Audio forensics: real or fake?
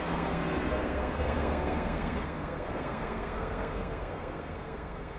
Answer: fake